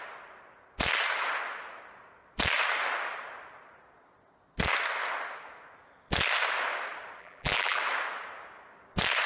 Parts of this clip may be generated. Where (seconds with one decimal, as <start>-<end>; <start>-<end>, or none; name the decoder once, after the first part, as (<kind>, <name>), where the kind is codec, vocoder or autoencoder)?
7.2-7.8 (vocoder, BigVGAN v2)